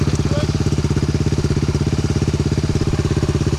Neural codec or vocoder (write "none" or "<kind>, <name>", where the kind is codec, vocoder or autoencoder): none